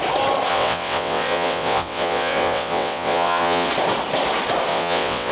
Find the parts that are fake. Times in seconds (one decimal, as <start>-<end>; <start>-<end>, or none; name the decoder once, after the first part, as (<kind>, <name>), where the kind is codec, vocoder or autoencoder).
0.5-3.7 (vocoder, WaveNeXt); 4.7-5.3